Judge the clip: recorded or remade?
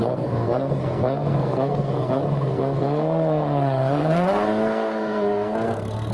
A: remade